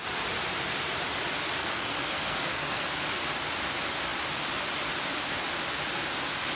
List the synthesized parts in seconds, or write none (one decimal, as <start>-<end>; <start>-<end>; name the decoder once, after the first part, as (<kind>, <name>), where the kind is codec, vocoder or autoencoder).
1.6-2.9 (codec, SNAC)